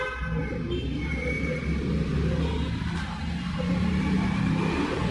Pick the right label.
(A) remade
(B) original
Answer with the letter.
B